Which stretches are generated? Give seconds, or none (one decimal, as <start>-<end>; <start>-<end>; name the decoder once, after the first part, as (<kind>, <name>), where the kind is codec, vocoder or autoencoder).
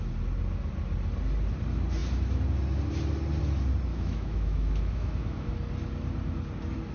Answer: 3.9-5.5 (autoencoder, DAC-VAE)